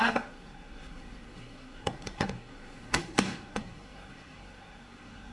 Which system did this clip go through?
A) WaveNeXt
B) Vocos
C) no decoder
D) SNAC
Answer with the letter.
D